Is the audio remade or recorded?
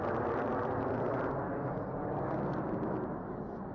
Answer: recorded